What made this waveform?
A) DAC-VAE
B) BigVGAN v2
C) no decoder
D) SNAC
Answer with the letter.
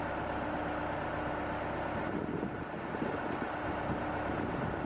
C